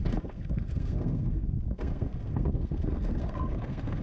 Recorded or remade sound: remade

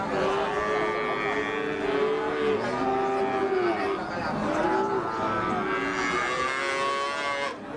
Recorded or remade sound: recorded